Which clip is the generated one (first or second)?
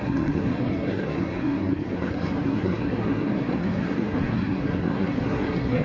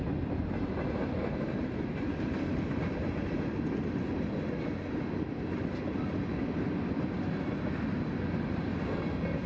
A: first